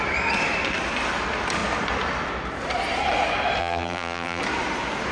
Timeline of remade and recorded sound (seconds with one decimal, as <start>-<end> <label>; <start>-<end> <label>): 0.0-3.6 recorded; 3.6-4.4 remade; 4.4-5.1 recorded